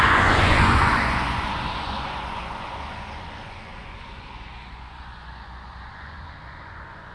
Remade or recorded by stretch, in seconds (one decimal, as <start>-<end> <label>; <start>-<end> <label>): 0.0-7.1 remade